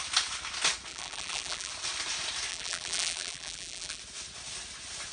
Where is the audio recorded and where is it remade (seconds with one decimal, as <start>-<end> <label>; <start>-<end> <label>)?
0.0-0.9 recorded; 0.9-1.7 remade; 1.7-2.5 recorded; 2.5-4.0 remade; 4.0-5.1 recorded